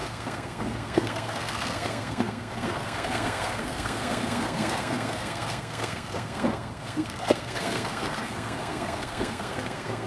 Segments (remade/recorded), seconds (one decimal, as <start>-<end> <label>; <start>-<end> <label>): 0.0-10.1 remade